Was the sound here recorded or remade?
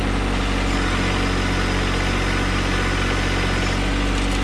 recorded